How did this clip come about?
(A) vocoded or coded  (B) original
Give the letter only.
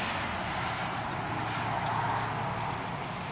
B